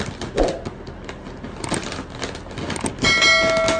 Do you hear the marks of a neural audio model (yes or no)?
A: no